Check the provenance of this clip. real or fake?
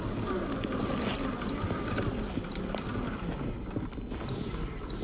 real